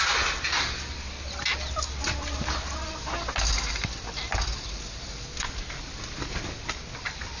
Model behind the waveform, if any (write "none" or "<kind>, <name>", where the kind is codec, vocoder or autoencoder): none